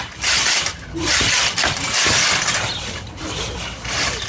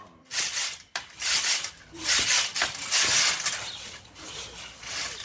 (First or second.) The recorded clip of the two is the second